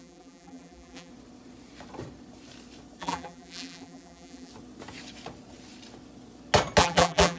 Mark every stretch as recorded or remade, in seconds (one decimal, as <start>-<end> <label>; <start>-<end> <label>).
0.0-1.1 remade; 1.1-3.0 recorded; 3.0-4.5 remade; 4.5-6.8 recorded; 6.8-7.4 remade